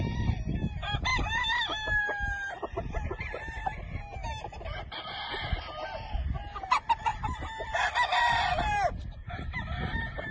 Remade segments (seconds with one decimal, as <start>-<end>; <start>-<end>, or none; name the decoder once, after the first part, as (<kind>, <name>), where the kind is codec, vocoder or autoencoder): none